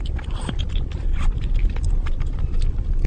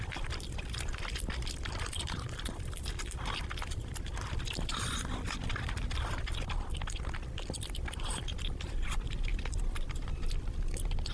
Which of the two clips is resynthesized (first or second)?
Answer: second